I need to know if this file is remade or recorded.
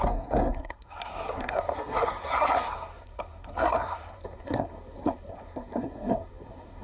remade